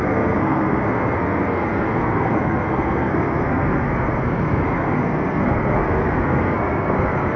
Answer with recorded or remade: remade